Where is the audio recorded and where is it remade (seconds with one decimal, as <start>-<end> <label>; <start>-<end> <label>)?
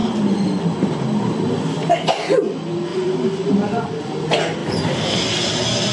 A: 0.0-0.6 remade; 0.6-2.9 recorded; 2.9-3.5 remade; 3.5-5.9 recorded